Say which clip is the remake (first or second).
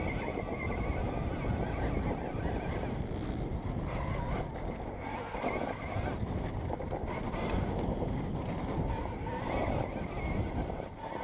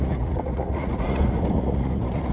second